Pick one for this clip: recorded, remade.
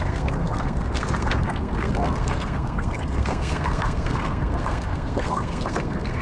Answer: remade